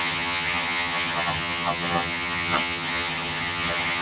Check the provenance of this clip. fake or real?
fake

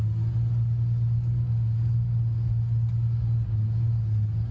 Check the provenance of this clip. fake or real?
real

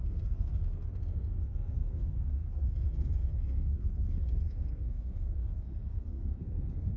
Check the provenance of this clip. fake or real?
fake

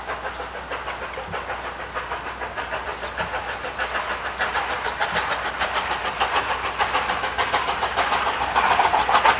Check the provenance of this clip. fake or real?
real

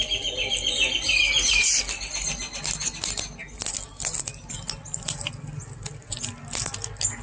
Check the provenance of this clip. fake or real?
real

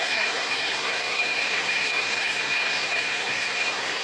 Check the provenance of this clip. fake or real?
fake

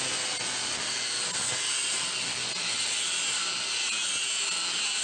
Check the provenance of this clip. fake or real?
real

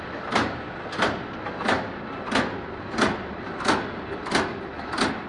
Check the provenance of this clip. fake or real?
real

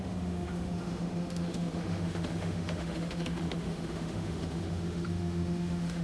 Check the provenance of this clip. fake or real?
fake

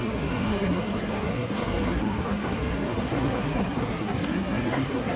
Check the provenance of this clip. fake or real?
fake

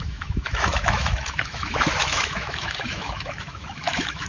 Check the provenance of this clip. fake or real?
fake